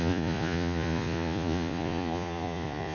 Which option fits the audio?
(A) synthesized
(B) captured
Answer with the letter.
A